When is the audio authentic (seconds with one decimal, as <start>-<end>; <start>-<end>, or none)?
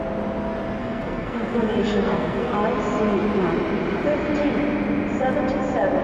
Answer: 0.0-0.8; 2.5-6.0